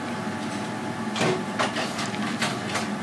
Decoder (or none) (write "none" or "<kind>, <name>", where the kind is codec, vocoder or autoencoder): none